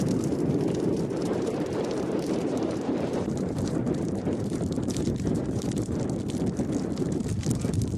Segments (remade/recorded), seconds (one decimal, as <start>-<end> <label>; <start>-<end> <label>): 0.0-1.2 recorded; 1.2-6.0 remade; 6.0-8.0 recorded